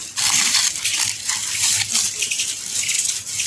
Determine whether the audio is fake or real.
real